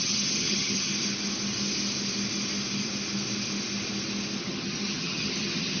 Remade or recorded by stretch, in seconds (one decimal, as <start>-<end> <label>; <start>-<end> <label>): 0.0-0.9 remade; 0.9-4.4 recorded; 4.4-5.8 remade